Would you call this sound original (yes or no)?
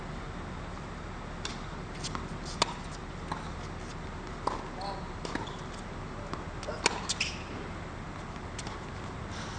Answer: yes